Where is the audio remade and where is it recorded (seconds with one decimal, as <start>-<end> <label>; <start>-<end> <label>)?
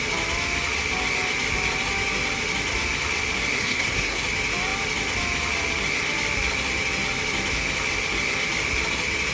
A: 0.0-3.6 recorded; 3.6-4.2 remade; 4.2-9.3 recorded